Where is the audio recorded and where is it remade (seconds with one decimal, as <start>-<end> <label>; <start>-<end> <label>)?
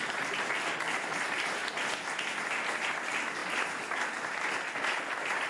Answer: 0.0-3.4 remade; 3.4-5.0 recorded; 5.0-5.5 remade